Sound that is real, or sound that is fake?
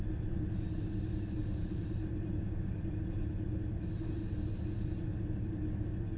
real